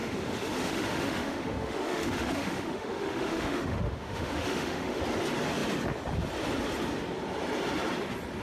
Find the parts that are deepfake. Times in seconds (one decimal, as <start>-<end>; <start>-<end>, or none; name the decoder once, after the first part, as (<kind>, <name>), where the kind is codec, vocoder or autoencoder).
0.0-5.0 (autoencoder, DAC-VAE)